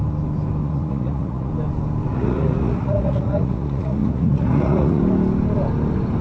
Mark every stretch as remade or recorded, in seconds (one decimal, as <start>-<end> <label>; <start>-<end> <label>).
0.0-0.6 recorded; 0.6-1.5 remade; 1.5-2.1 recorded; 2.1-5.0 remade; 5.0-6.2 recorded